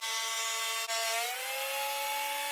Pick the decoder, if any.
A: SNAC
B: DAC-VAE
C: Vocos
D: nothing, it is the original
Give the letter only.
D